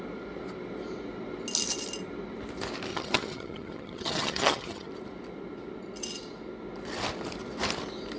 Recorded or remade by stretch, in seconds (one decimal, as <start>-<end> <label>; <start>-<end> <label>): 0.0-2.9 recorded; 2.9-4.9 remade; 4.9-8.2 recorded